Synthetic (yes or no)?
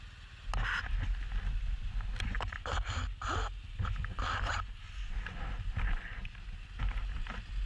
no